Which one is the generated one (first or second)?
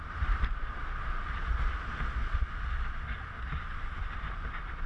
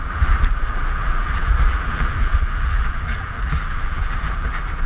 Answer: second